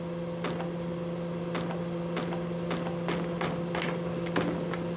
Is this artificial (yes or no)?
no